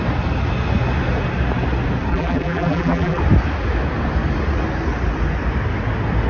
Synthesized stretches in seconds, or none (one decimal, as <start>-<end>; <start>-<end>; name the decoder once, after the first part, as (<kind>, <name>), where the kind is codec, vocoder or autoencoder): 2.1-3.2 (vocoder, BigVGAN v2)